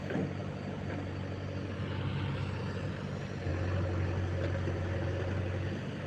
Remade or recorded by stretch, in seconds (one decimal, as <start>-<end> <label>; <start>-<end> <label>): 0.0-6.1 recorded